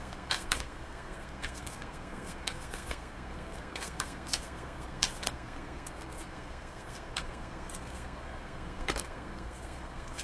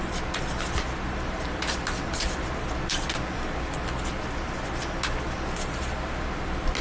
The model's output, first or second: first